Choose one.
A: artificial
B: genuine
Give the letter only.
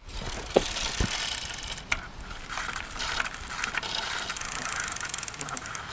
B